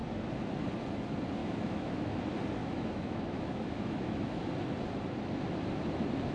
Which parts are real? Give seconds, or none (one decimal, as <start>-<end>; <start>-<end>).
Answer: 0.0-1.4; 2.2-2.6; 4.5-6.3